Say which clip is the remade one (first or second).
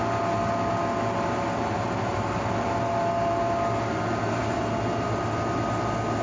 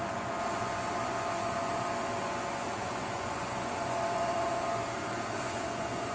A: second